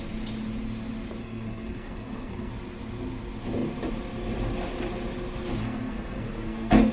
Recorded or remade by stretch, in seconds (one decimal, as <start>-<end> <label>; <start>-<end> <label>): 0.0-1.2 recorded; 1.2-2.5 remade; 2.5-5.6 recorded; 5.6-6.9 remade